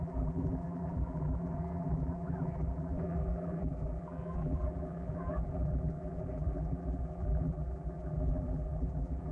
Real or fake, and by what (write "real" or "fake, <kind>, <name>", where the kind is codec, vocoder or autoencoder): fake, vocoder, BigVGAN v2